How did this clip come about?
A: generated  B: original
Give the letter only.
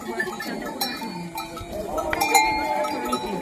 A